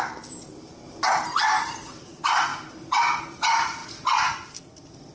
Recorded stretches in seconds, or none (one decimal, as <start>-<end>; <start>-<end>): 0.0-2.5; 3.2-5.1